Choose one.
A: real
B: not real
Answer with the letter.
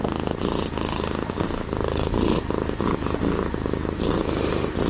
A